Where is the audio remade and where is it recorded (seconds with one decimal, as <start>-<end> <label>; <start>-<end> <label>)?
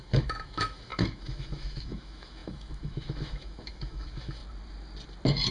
0.0-4.4 remade; 4.4-5.5 recorded